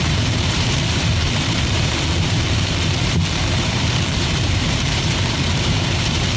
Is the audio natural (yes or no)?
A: no